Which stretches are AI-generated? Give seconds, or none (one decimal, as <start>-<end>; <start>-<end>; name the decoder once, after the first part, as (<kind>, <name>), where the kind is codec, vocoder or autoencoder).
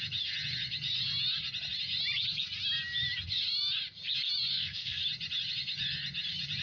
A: 4.5-5.0 (codec, SNAC)